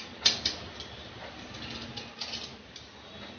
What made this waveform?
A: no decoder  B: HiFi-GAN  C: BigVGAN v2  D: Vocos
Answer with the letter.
A